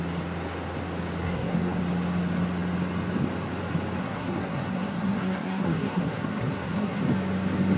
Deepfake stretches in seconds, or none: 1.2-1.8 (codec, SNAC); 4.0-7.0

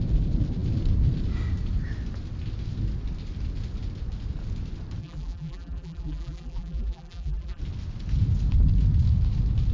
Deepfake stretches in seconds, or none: 5.0-7.6 (vocoder, BigVGAN v2)